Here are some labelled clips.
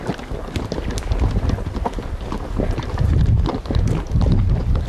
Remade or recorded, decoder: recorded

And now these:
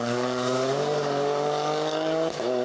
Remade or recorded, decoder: remade, codec, DAC